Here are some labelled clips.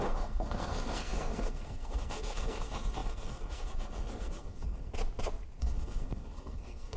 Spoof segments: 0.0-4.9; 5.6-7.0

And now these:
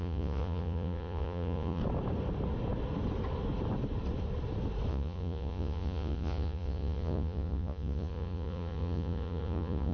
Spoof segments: 0.0-1.8; 4.9-9.9

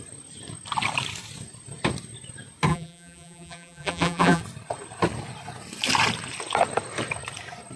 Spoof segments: 2.7-4.4

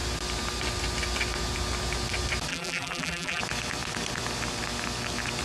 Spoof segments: 2.5-3.4

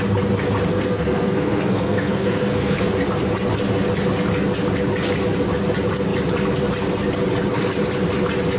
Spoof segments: 0.7-2.9

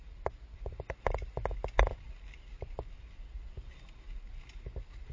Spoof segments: none

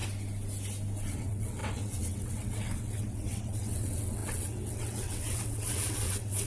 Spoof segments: 1.1-6.5